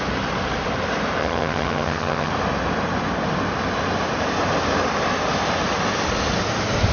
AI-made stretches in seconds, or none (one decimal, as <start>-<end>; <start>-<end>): 1.2-2.3